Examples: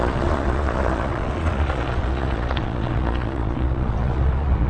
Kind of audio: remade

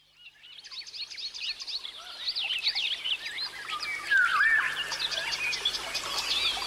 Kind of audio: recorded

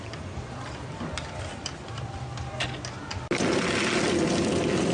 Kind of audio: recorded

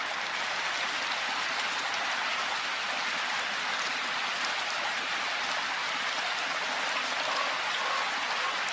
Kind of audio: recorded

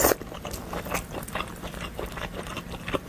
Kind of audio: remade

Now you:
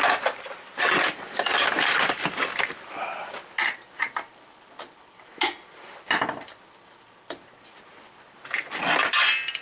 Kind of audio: recorded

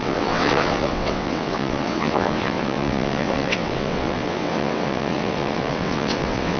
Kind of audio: remade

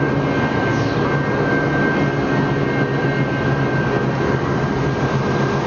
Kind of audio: recorded